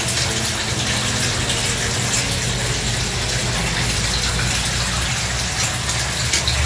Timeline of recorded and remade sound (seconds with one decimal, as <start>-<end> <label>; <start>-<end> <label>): 0.0-6.7 recorded